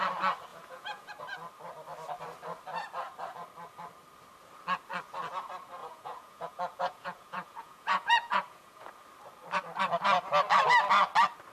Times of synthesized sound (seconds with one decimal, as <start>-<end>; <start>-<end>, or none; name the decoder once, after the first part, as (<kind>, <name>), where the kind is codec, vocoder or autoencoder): 0.5-1.1 (vocoder, Vocos); 5.8-8.9